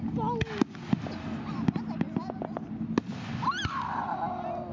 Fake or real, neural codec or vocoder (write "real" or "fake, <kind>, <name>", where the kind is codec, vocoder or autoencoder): real